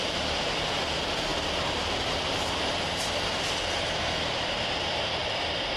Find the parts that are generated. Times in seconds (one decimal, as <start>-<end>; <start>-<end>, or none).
0.0-1.3; 4.8-5.8